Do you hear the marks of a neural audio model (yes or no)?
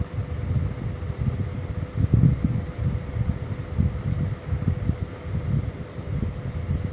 no